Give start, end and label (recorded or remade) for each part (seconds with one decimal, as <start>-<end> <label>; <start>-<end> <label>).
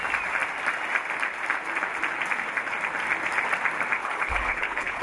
0.0-4.0 recorded; 4.0-5.0 remade